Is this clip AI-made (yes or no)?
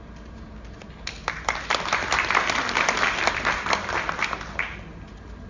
no